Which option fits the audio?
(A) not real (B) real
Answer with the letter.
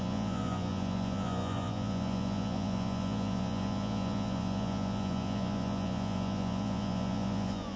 A